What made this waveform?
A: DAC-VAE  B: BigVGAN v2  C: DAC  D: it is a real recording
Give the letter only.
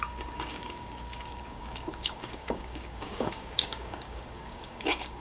C